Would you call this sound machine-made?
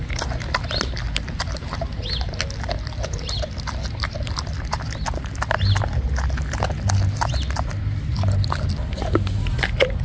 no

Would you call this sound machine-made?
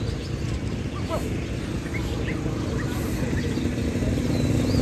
no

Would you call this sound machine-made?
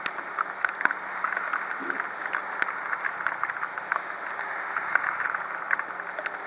no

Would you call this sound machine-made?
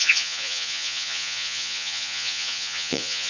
yes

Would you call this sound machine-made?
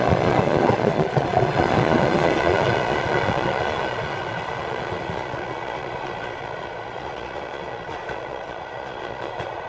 yes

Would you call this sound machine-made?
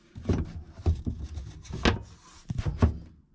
no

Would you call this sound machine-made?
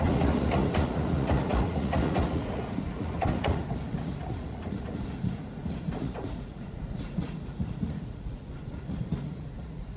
yes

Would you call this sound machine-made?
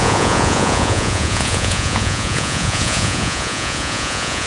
yes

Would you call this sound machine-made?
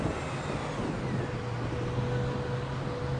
no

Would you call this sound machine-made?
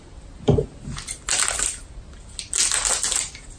no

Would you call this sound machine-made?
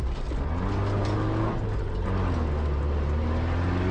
no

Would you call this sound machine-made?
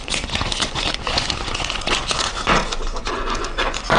yes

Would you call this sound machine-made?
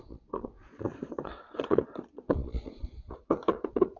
yes